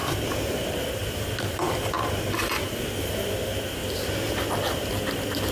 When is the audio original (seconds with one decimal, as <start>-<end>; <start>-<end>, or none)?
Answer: 2.9-5.5